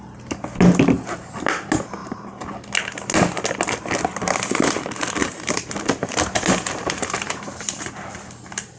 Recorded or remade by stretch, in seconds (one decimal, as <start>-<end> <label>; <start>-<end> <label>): 0.0-2.0 recorded; 2.0-2.5 remade; 2.5-5.2 recorded; 5.2-8.1 remade; 8.1-8.8 recorded